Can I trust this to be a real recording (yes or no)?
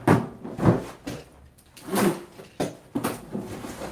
yes